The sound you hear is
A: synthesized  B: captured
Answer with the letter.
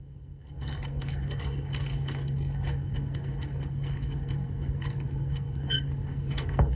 A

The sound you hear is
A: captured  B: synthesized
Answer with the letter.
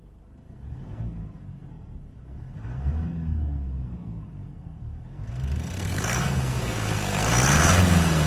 B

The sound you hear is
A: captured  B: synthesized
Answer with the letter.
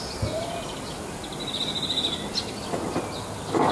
A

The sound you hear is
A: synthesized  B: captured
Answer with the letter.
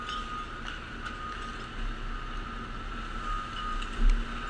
B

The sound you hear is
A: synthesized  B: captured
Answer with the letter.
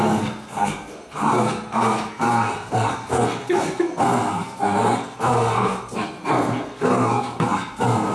A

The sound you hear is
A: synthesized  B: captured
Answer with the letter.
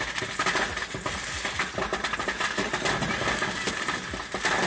B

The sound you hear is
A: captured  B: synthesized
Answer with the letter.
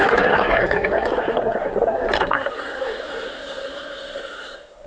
B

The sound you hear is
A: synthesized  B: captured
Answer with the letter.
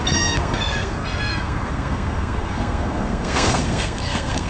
A